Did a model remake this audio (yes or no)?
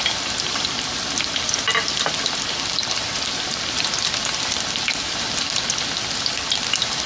yes